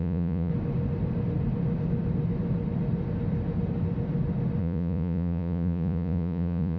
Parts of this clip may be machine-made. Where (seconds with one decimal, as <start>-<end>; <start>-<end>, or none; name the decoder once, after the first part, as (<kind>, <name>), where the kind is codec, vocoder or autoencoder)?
0.0-0.5 (vocoder, Vocos); 4.6-6.8